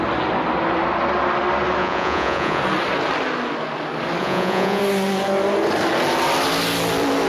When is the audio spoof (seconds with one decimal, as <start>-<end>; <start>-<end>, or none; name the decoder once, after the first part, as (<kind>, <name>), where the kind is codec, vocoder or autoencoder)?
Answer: 1.8-2.6 (vocoder, Vocos); 4.2-4.8